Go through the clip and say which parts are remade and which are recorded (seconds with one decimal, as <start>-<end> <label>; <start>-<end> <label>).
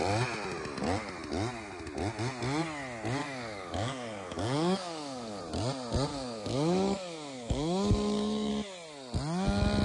0.0-3.2 recorded; 3.2-5.4 remade; 5.4-6.1 recorded; 6.1-8.5 remade; 8.5-9.8 recorded